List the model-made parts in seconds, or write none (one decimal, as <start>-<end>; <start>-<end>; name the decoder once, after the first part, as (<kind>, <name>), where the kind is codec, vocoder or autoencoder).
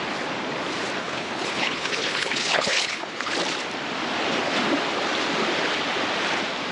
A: 1.0-3.3 (codec, HILCodec)